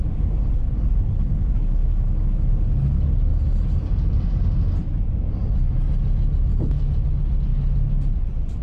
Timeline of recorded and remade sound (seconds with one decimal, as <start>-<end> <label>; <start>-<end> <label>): 0.0-1.8 recorded; 1.8-2.5 remade; 2.5-8.6 recorded